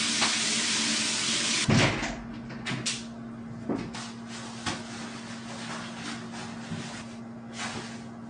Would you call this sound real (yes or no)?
yes